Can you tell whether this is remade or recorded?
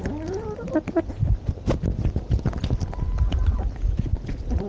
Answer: recorded